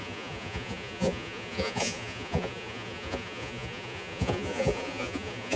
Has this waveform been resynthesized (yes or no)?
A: yes